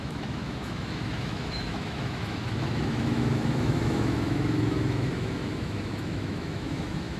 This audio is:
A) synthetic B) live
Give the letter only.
A